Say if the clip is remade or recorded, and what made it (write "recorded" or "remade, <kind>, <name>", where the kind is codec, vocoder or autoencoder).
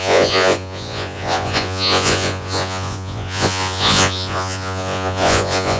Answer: remade, vocoder, Vocos